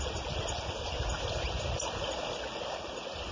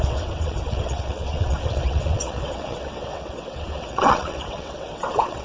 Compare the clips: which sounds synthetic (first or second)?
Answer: second